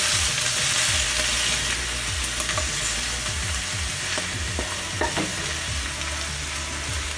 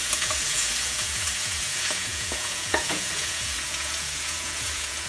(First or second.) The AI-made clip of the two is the second